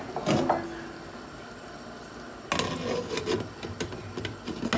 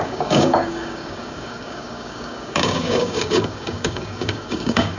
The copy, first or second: second